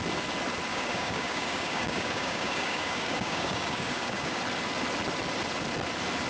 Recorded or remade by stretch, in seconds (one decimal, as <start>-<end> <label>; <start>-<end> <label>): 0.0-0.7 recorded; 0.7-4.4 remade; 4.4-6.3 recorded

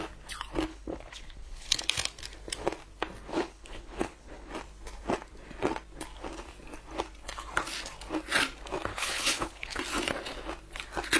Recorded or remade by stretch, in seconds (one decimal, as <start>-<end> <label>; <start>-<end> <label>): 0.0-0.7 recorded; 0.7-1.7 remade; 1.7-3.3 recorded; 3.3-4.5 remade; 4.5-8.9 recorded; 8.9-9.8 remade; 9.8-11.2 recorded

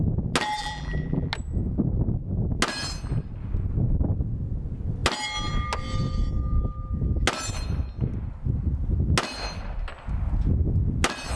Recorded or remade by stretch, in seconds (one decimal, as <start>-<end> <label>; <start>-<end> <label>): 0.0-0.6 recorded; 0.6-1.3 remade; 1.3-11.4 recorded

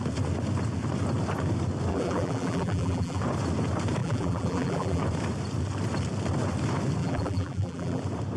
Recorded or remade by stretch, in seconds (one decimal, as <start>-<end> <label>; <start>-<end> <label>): 0.0-1.9 recorded; 1.9-3.2 remade; 3.2-4.0 recorded; 4.0-5.0 remade; 5.0-7.0 recorded; 7.0-8.0 remade; 8.0-8.4 recorded

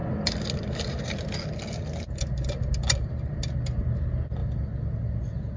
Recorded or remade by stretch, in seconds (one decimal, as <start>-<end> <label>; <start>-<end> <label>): 0.0-5.6 recorded

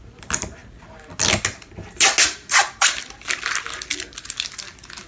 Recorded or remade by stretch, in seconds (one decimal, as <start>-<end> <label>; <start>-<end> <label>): 0.0-5.1 recorded